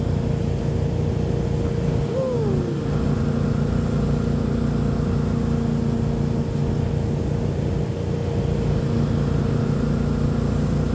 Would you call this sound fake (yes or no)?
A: no